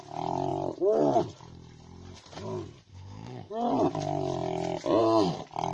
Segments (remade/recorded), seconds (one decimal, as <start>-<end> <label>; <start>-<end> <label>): 0.0-2.9 recorded; 2.9-3.5 remade; 3.5-5.7 recorded